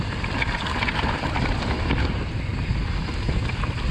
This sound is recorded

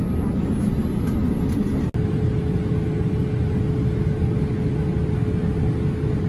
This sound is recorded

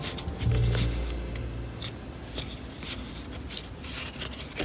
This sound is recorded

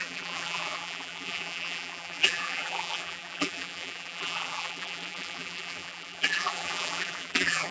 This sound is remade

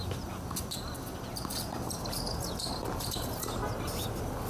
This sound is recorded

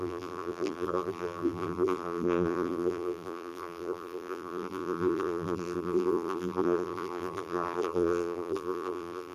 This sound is remade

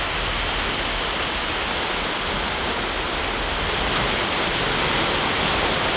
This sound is recorded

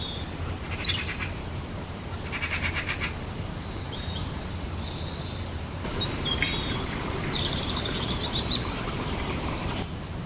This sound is remade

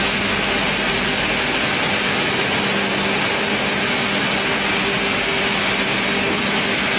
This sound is recorded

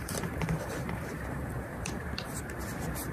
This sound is remade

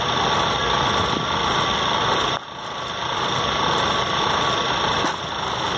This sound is recorded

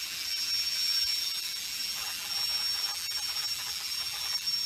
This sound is remade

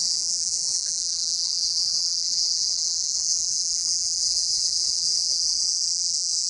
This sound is remade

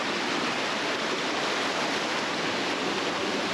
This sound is recorded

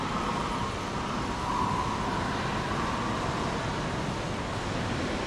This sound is recorded